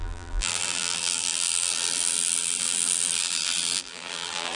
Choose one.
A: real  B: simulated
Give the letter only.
B